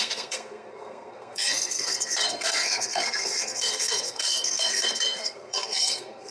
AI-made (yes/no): yes